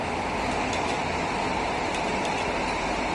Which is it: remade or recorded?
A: recorded